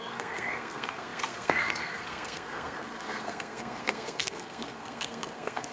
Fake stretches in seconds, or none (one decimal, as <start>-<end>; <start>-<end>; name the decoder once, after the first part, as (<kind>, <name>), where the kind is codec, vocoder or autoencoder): 0.0-5.7 (codec, SNAC)